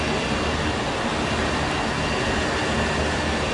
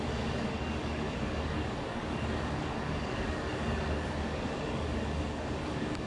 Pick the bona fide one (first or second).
first